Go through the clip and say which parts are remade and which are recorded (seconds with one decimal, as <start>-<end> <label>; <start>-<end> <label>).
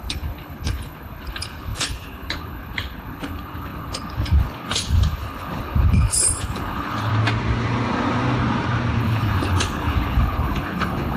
0.0-7.1 remade; 7.1-9.0 recorded; 9.0-11.2 remade